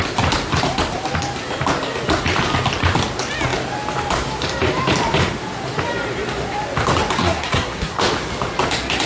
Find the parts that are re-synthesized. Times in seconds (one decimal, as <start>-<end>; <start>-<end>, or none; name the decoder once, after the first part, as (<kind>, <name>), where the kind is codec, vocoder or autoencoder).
7.2-8.0 (codec, SNAC)